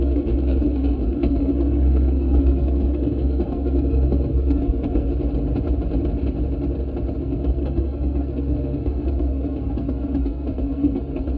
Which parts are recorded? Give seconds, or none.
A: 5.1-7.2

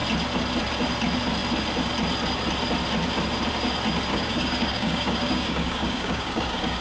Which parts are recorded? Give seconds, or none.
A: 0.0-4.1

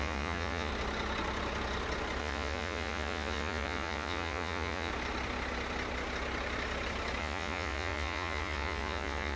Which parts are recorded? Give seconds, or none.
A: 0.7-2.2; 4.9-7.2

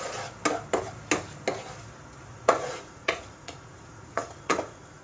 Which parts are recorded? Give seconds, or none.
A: 0.0-2.3

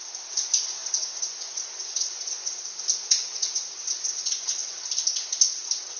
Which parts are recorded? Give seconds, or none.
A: 0.0-0.8; 2.5-3.2; 4.6-6.0

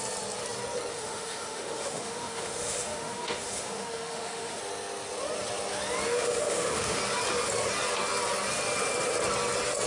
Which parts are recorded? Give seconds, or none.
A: 0.0-0.9; 4.6-6.1; 7.0-9.9

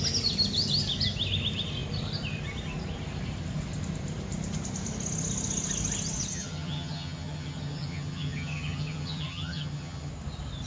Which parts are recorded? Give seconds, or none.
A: 0.0-6.3; 10.1-10.7